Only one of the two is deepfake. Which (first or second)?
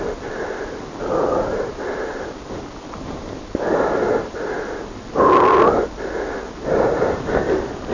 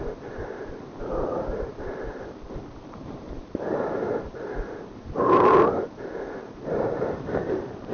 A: second